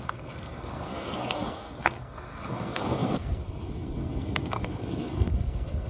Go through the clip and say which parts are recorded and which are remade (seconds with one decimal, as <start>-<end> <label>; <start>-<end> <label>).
0.0-5.9 remade